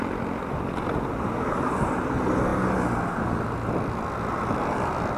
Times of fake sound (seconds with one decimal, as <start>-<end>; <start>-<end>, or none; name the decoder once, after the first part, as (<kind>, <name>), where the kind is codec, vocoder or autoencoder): none

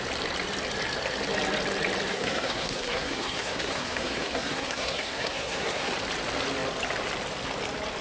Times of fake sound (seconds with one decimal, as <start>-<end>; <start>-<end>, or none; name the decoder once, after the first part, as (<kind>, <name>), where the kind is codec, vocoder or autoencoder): 2.1-5.9 (codec, SNAC)